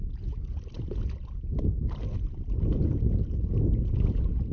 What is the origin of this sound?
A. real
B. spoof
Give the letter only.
A